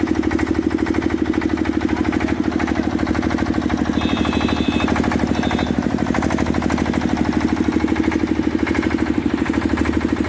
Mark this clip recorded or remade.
recorded